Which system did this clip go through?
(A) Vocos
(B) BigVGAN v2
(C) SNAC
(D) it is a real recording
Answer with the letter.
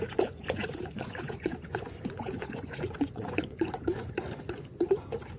A